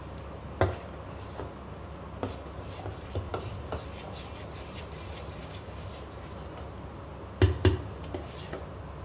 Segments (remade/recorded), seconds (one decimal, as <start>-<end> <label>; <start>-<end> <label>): 0.0-5.4 recorded; 5.4-5.9 remade; 5.9-9.0 recorded